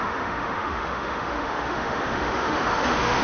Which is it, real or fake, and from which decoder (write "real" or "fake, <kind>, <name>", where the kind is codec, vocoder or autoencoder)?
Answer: fake, autoencoder, DAC-VAE